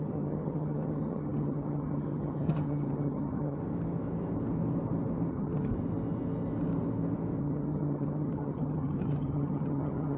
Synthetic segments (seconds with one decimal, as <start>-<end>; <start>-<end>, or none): 0.0-3.6; 5.3-5.7; 7.4-10.2